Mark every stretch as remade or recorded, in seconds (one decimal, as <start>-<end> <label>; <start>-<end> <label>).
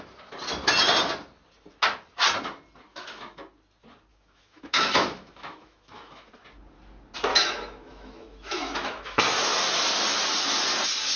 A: 0.0-2.9 recorded; 2.9-3.4 remade; 3.4-4.1 recorded; 4.1-6.3 remade; 6.3-7.3 recorded; 7.3-9.2 remade; 9.2-11.2 recorded